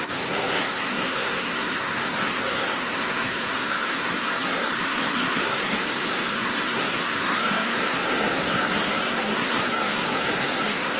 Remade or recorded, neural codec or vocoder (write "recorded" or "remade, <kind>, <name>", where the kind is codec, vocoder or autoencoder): remade, codec, SNAC